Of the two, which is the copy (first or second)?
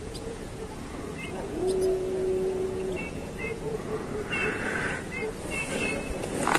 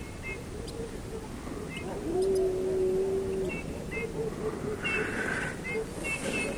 first